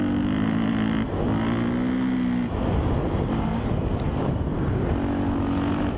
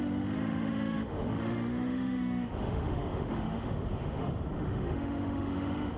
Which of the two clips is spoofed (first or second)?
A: second